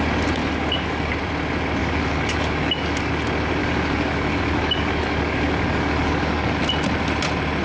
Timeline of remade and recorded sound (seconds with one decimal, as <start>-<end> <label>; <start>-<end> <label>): 0.0-0.4 recorded; 0.4-1.1 remade; 1.1-1.8 recorded; 1.8-3.1 remade; 3.1-3.6 recorded; 3.6-6.6 remade; 6.6-7.6 recorded